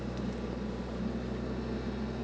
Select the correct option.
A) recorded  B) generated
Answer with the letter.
A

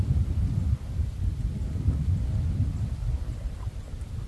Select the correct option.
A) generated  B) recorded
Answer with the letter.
A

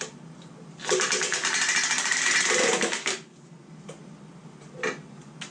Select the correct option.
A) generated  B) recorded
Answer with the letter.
B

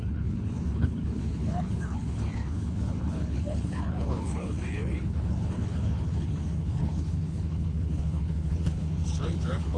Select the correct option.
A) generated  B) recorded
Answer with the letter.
A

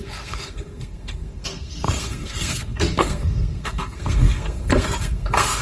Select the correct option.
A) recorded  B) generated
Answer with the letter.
B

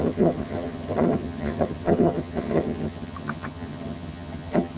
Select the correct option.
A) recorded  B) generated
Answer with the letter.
B